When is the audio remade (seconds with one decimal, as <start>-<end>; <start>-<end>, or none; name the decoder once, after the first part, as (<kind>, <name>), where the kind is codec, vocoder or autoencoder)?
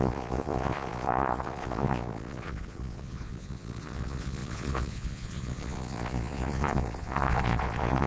0.0-8.1 (vocoder, Vocos)